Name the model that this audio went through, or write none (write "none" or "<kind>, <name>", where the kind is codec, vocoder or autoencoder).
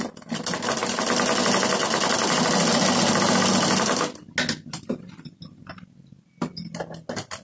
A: none